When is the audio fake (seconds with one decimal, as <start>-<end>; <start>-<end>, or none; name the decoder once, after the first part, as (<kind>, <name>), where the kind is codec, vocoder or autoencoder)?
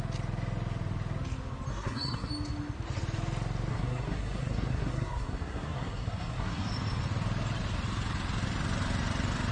1.7-2.3 (codec, SNAC); 3.7-6.7